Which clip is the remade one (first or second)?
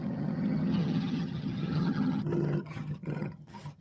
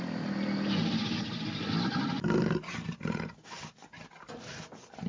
first